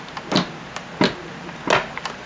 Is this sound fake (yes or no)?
no